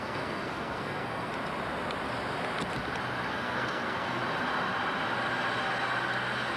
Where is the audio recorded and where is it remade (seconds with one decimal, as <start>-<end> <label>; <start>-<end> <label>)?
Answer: 0.0-1.3 remade; 1.3-3.3 recorded; 3.3-4.2 remade; 4.2-6.6 recorded